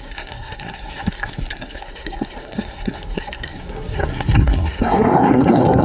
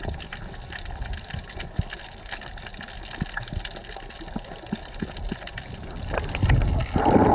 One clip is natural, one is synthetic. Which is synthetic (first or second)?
first